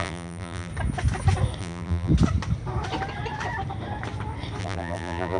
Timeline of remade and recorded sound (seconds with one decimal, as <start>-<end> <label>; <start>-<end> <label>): 0.0-0.7 remade; 0.7-1.6 recorded; 1.6-2.1 remade; 2.1-4.6 recorded; 4.6-5.4 remade